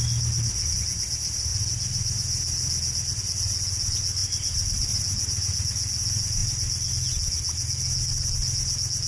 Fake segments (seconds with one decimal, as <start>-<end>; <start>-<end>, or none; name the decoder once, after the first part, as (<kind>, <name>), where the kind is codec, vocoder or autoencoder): 4.2-5.0 (vocoder, BigVGAN v2)